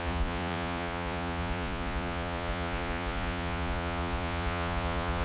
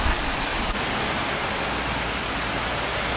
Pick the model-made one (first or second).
first